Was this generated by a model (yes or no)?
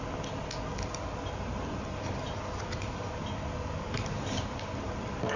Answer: no